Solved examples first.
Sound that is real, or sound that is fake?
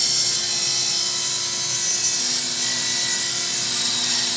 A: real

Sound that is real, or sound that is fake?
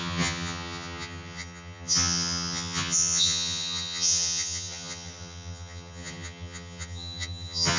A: fake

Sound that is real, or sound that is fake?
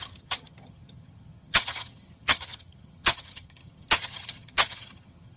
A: fake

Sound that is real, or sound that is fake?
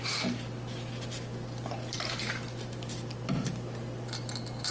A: real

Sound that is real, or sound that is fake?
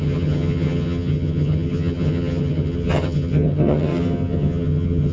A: fake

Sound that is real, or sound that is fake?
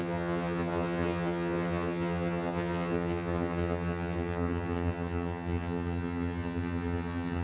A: fake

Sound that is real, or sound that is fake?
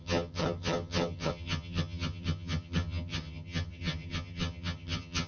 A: fake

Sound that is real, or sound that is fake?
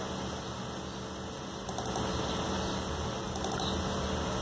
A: real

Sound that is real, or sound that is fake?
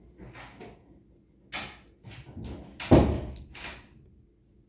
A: real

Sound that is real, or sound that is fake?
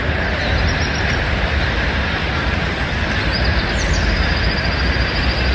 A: real